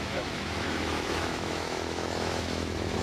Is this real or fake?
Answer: fake